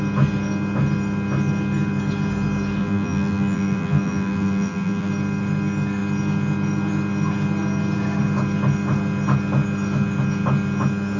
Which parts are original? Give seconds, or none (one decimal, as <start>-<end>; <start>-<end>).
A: 0.0-2.8; 5.1-11.2

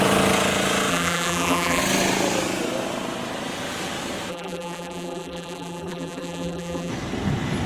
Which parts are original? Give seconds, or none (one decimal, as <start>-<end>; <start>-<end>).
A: 0.0-0.9; 1.8-4.3; 6.9-7.7

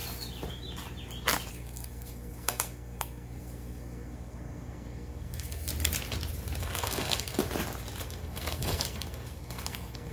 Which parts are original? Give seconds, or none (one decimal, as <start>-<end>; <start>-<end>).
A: 0.0-1.5; 5.7-6.6; 7.4-8.0